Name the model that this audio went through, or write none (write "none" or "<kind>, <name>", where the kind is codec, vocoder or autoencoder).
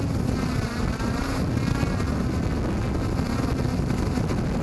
none